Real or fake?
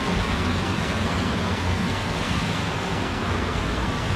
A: fake